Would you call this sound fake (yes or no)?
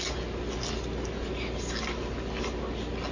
no